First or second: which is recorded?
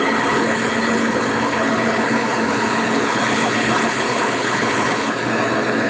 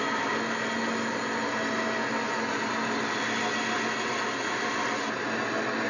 second